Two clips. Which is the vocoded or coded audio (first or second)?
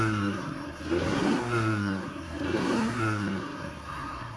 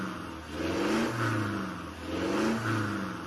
first